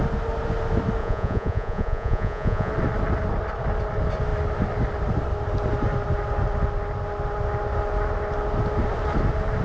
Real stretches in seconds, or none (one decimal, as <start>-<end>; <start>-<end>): 0.0-1.0; 2.7-9.6